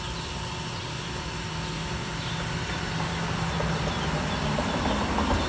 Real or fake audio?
real